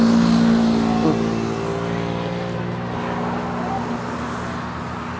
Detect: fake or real real